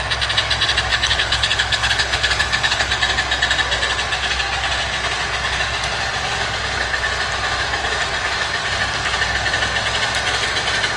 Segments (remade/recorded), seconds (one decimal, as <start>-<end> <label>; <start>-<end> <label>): 0.0-0.9 recorded; 0.9-2.9 remade; 2.9-11.0 recorded